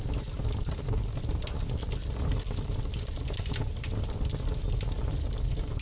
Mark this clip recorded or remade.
recorded